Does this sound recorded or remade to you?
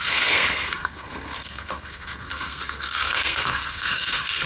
remade